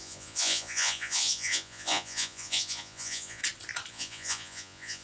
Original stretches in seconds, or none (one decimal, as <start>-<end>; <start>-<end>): 3.4-3.9